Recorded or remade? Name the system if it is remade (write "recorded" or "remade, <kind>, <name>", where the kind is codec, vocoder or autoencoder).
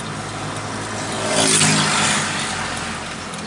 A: recorded